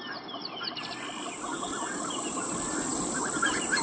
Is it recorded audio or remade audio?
recorded